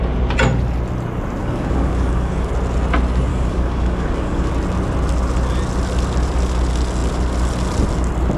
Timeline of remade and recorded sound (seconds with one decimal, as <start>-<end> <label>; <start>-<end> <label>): 0.0-1.4 recorded; 1.4-2.5 remade; 2.5-3.3 recorded; 3.3-4.5 remade; 4.5-8.4 recorded